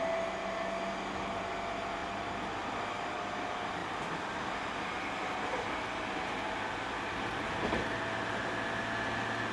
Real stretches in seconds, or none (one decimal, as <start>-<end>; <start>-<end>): 0.0-2.0; 2.8-3.8; 7.2-9.5